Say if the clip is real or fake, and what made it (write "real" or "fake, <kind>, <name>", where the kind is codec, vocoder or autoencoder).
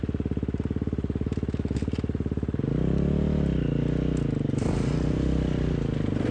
real